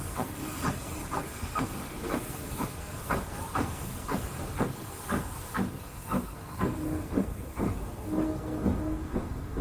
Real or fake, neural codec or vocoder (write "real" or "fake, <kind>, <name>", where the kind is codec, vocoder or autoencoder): fake, codec, SNAC